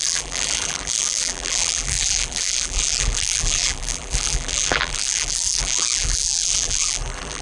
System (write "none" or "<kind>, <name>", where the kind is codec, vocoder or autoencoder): vocoder, BigVGAN v2